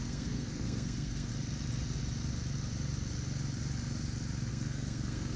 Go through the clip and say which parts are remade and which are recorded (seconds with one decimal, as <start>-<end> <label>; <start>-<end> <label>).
0.0-1.3 remade; 1.3-4.5 recorded; 4.5-5.4 remade